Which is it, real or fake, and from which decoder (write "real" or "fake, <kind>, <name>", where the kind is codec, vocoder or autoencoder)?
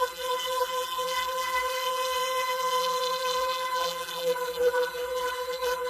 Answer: fake, vocoder, BigVGAN v2